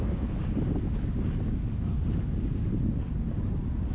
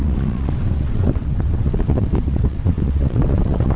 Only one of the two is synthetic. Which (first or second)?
second